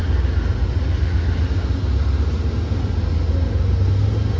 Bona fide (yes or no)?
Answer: yes